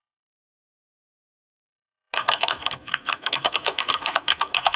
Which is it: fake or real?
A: fake